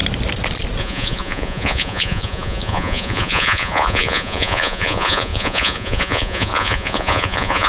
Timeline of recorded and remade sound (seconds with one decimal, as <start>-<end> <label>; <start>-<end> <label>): 0.0-0.8 recorded; 0.8-7.7 remade